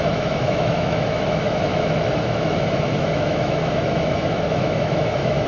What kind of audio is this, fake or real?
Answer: fake